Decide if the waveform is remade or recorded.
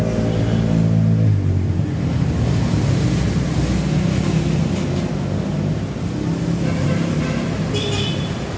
recorded